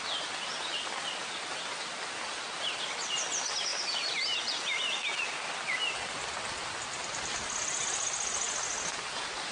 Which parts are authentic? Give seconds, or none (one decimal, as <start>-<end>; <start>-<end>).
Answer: 0.0-9.5